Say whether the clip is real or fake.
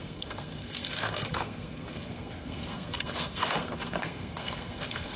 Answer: fake